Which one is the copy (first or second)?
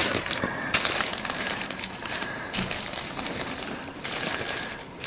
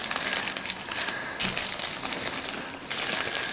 first